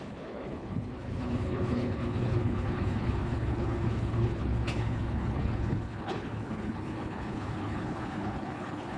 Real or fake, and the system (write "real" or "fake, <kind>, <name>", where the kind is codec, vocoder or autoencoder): fake, codec, HILCodec